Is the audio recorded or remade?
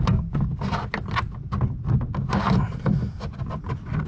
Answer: recorded